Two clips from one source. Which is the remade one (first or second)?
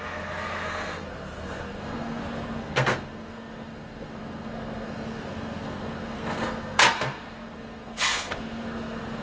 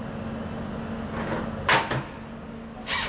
first